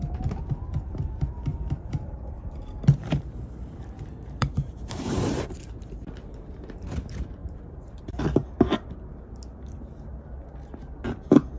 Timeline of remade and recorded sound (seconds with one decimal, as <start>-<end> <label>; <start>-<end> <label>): 0.0-1.5 recorded; 1.5-5.5 remade; 5.5-7.4 recorded; 7.4-8.0 remade; 8.0-11.6 recorded